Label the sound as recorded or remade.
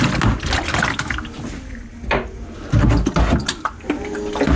recorded